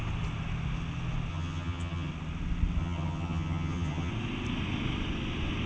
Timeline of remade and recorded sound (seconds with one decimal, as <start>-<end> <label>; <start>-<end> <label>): 0.0-1.3 recorded; 1.3-2.1 remade; 2.1-2.8 recorded; 2.8-4.1 remade; 4.1-5.7 recorded